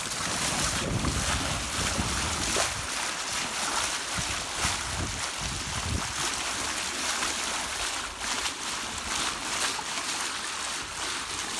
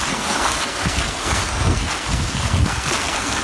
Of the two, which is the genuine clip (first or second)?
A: first